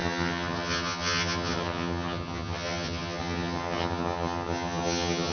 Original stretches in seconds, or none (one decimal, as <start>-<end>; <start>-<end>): none